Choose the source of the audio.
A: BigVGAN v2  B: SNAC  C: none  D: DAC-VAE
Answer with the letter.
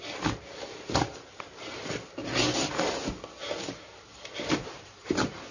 C